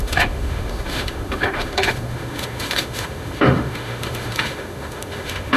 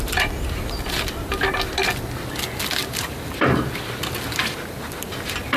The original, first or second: second